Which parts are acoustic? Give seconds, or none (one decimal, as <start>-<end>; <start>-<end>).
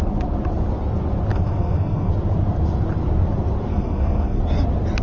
0.0-1.3; 2.1-3.7; 4.4-5.0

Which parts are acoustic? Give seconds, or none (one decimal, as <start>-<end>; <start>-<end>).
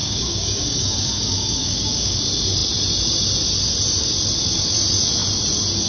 2.2-5.9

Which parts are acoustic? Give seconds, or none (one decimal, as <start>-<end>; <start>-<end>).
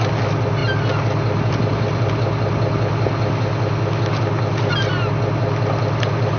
0.0-6.4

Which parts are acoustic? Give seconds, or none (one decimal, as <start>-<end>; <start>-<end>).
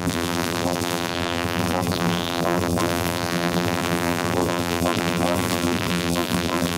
none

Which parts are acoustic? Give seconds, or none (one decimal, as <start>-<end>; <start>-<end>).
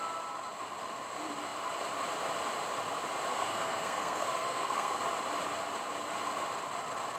0.0-3.3; 5.0-7.2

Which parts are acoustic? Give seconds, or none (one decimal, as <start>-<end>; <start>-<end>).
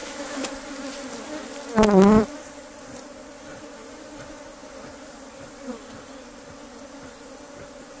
0.5-8.0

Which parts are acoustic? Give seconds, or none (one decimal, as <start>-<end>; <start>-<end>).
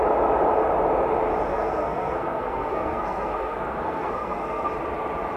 0.0-1.5; 4.7-5.4